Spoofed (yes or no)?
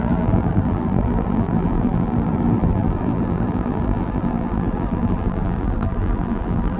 yes